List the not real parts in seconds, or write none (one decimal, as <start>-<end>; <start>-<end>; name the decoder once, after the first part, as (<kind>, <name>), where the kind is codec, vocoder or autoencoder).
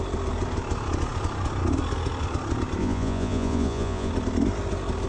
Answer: 2.8-4.1 (vocoder, Vocos)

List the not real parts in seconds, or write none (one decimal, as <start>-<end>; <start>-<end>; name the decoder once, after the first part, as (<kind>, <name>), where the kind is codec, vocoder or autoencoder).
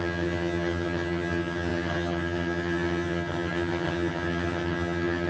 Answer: 0.0-5.3 (vocoder, HiFi-GAN)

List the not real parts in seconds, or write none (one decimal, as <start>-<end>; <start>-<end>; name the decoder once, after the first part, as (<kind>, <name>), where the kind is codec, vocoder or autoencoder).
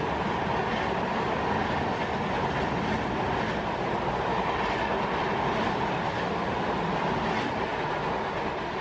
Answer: none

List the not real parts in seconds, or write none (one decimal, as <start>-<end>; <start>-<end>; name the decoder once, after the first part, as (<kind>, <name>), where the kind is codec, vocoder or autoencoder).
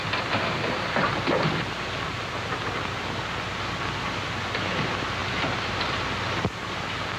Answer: 5.2-6.1 (vocoder, BigVGAN v2)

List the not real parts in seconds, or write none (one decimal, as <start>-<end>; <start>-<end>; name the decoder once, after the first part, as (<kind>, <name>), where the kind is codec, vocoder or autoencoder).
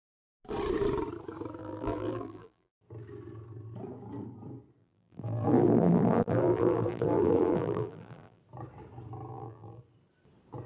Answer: 1.6-2.8 (vocoder, BigVGAN v2); 4.8-8.4; 9.3-9.8